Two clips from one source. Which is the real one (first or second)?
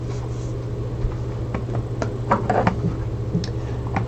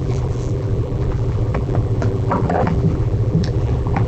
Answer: first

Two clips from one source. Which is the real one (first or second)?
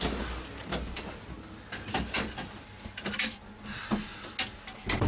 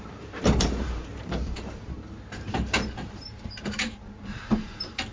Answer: first